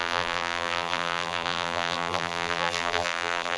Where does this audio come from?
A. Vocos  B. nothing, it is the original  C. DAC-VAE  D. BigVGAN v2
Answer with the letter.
D